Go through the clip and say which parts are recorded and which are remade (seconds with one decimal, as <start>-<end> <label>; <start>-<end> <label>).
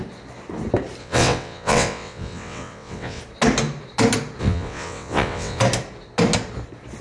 0.0-1.0 recorded; 1.0-3.2 remade; 3.2-4.4 recorded; 4.4-5.6 remade; 5.6-7.0 recorded